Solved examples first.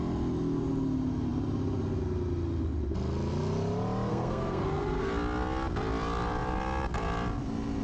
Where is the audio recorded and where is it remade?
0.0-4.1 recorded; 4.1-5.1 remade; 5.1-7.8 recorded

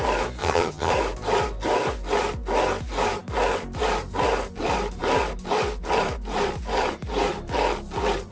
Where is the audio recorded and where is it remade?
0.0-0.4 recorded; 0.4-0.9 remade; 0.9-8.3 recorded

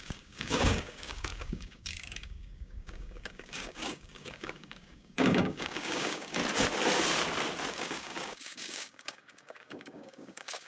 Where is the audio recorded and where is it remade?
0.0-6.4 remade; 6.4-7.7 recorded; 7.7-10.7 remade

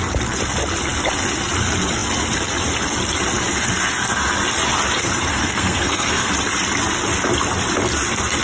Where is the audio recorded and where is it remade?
0.0-5.0 recorded; 5.0-6.3 remade; 6.3-8.4 recorded